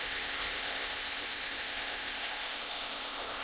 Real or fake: fake